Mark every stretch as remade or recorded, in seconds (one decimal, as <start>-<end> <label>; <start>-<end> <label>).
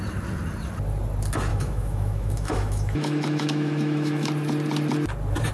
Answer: 0.0-1.5 recorded; 1.5-4.3 remade; 4.3-5.5 recorded